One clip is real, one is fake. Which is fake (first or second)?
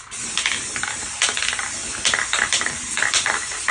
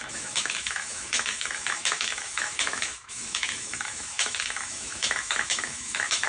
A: second